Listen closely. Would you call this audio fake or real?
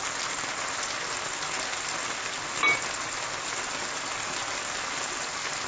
real